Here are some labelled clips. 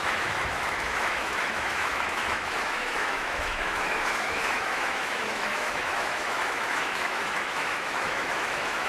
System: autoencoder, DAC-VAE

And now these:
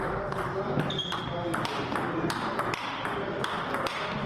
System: none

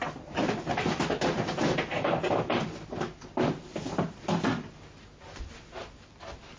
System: none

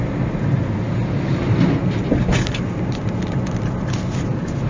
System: none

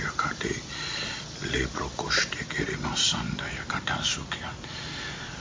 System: none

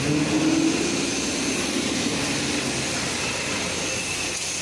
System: none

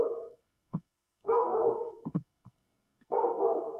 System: codec, SNAC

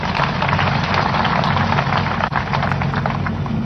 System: none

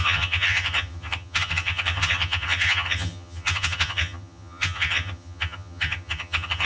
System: vocoder, HiFi-GAN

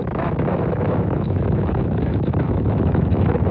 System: autoencoder, DAC-VAE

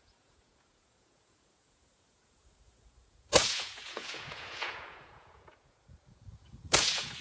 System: vocoder, Vocos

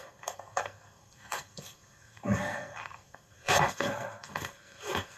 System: codec, SNAC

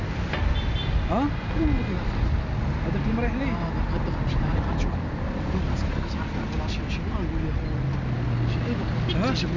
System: none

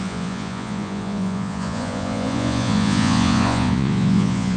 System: vocoder, Vocos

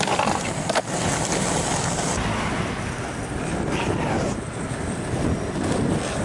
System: none